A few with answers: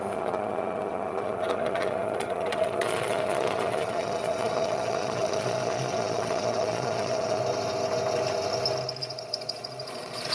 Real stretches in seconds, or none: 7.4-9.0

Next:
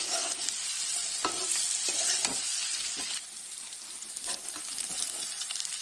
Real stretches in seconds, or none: 0.0-5.8

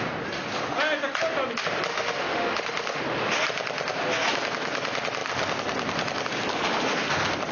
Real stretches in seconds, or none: 0.0-1.9; 3.0-7.5

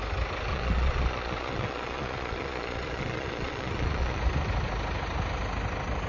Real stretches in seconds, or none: 0.0-0.5; 4.2-6.1

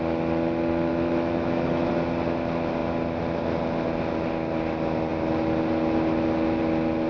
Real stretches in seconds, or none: 0.0-0.9; 1.9-7.1